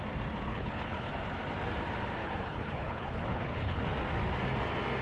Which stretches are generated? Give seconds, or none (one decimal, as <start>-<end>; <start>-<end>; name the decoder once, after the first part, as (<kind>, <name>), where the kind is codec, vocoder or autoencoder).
0.5-1.1 (codec, HILCodec); 2.2-3.8